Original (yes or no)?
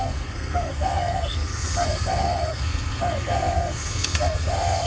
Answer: no